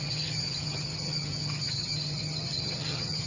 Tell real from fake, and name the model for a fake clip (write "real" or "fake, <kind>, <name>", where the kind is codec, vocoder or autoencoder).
fake, vocoder, HiFi-GAN